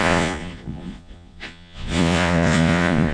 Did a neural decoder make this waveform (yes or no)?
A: yes